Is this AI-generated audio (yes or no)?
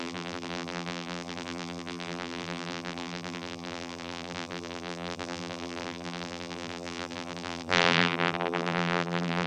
yes